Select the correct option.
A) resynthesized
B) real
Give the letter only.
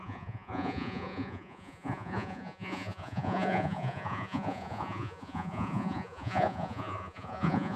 A